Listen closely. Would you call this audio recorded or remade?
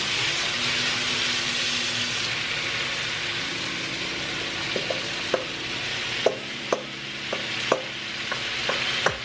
recorded